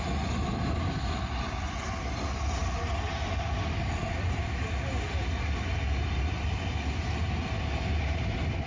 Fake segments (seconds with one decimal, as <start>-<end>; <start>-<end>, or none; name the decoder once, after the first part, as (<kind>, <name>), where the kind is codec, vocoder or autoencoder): none